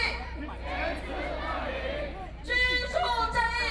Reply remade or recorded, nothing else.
remade